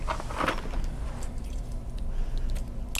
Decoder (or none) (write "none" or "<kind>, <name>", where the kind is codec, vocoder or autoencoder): none